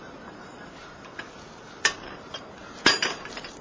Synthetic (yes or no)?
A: yes